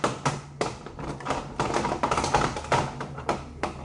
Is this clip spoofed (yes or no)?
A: no